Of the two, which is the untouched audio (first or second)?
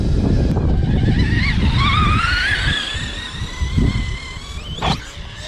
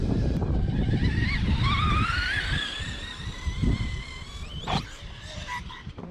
first